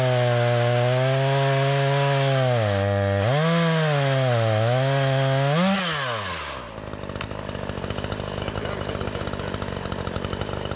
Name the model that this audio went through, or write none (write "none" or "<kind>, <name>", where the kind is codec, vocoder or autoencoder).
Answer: none